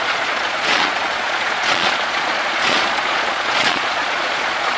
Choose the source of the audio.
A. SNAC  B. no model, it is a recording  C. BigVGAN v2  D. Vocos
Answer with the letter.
D